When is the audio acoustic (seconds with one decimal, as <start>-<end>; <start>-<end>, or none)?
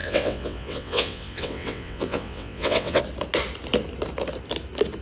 3.0-5.0